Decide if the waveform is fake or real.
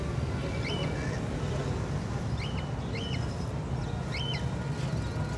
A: real